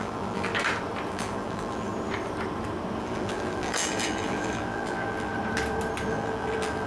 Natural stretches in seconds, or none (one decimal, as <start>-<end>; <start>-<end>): 0.5-1.1; 1.9-3.0; 5.3-6.1